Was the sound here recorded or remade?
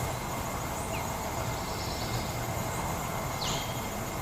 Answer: recorded